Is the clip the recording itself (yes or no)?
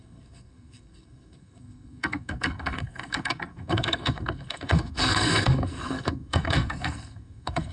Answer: no